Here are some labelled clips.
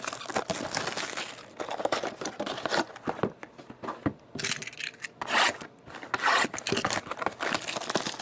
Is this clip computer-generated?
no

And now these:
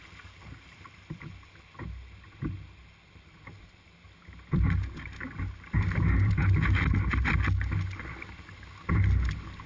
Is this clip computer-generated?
no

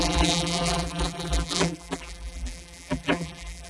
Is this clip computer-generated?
yes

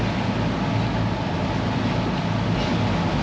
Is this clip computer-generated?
no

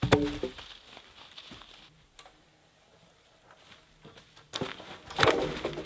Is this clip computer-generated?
no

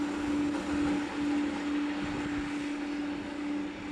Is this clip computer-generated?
no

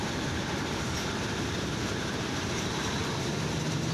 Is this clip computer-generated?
yes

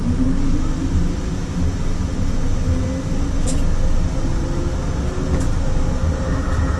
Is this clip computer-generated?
no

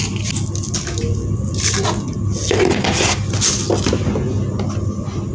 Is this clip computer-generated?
no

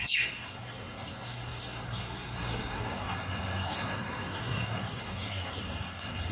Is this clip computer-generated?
yes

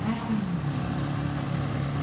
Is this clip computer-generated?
no